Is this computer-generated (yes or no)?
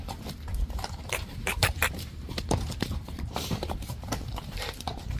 yes